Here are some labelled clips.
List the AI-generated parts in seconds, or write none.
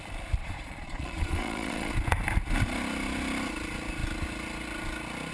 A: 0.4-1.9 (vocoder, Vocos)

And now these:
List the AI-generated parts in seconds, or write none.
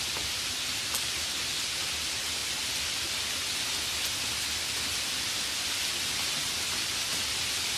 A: none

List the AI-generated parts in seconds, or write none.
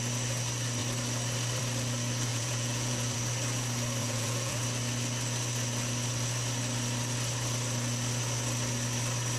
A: 2.3-3.2 (vocoder, Vocos); 4.0-4.6